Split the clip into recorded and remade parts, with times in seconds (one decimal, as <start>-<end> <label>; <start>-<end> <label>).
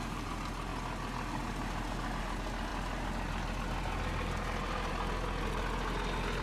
0.0-6.4 recorded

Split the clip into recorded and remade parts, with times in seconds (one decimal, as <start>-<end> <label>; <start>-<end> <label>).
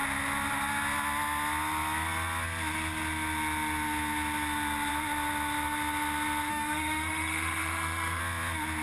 0.0-6.5 recorded; 6.5-8.2 remade; 8.2-8.8 recorded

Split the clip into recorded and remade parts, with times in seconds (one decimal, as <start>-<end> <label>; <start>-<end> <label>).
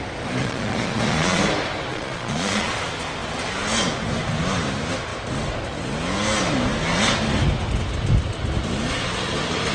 0.0-0.4 recorded; 0.4-1.4 remade; 1.4-1.9 recorded; 1.9-2.7 remade; 2.7-9.7 recorded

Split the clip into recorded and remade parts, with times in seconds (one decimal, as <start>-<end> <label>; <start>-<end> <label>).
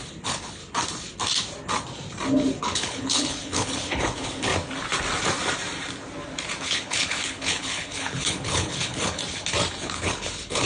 0.0-0.6 remade; 0.6-2.6 recorded; 2.6-4.5 remade; 4.5-6.6 recorded; 6.6-9.2 remade; 9.2-9.8 recorded; 9.8-10.7 remade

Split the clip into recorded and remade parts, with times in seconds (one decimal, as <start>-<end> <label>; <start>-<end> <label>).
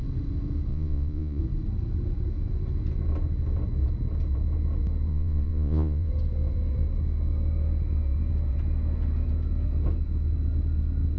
0.0-0.7 recorded; 0.7-1.4 remade; 1.4-5.1 recorded; 5.1-6.1 remade; 6.1-11.2 recorded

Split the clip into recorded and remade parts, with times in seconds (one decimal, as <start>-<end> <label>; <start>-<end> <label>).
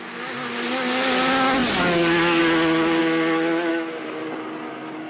0.0-5.1 recorded